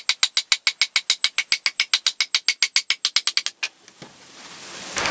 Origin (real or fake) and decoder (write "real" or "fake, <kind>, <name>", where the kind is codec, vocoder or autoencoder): real